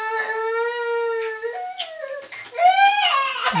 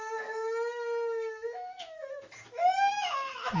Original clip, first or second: first